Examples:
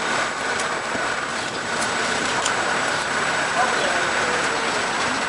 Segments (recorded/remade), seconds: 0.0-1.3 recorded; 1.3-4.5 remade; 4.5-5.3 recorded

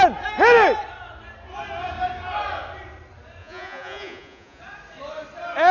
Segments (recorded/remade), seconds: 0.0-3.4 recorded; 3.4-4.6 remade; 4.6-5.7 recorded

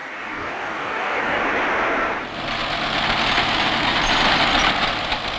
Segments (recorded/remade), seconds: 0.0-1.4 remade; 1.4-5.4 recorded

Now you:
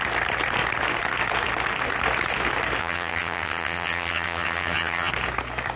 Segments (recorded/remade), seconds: 0.0-2.8 recorded; 2.8-5.1 remade; 5.1-5.8 recorded